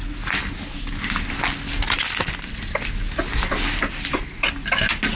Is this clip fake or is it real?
real